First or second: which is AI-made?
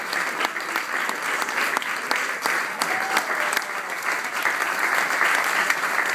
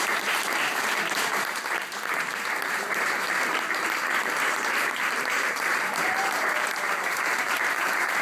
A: second